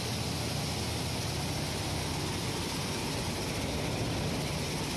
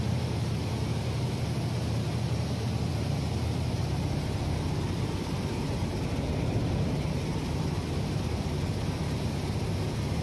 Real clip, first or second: first